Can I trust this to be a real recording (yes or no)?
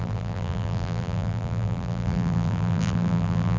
no